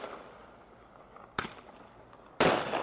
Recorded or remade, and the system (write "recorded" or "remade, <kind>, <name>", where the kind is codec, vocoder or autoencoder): recorded